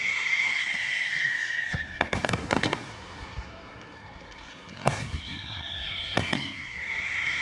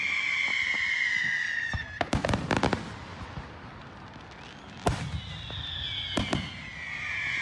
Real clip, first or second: second